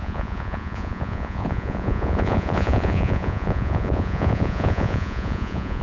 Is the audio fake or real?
fake